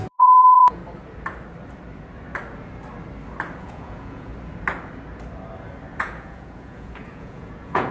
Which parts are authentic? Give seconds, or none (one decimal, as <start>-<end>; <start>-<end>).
0.8-3.6; 4.3-6.0